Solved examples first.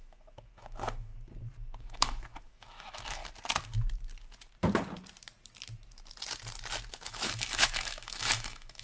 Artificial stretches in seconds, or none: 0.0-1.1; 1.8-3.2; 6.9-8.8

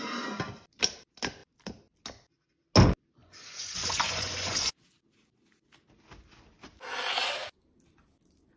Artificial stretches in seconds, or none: 3.2-4.7

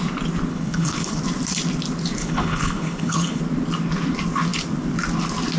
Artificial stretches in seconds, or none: 0.5-1.2; 2.2-3.4